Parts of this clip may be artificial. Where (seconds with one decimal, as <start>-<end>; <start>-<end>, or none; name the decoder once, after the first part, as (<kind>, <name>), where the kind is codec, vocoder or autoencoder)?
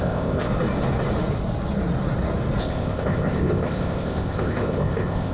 0.0-0.5 (codec, ZipCodec); 2.6-5.3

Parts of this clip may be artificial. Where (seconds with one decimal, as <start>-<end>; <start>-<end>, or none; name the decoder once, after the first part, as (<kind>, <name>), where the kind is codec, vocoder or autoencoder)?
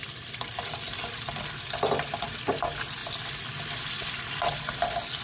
none